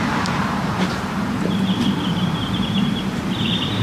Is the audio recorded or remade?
remade